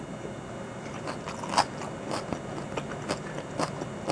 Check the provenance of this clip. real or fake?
real